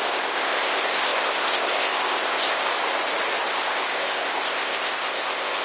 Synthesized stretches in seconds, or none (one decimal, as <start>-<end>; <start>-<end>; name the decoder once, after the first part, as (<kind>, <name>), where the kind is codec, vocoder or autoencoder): 0.0-2.7 (codec, ZipCodec); 3.5-5.6